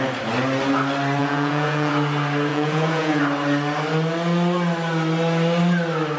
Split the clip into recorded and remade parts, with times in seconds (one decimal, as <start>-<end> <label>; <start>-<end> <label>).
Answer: 0.0-1.2 recorded; 1.2-1.9 remade; 1.9-2.5 recorded; 2.5-3.2 remade; 3.2-6.2 recorded